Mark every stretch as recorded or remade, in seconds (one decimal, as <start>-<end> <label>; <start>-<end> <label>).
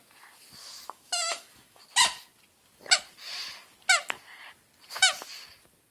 0.0-0.6 recorded; 0.6-1.8 remade; 1.8-5.9 recorded